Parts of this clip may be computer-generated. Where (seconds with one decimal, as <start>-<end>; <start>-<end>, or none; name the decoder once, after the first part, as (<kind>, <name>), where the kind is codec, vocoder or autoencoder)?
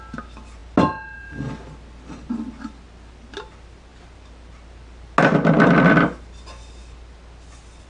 none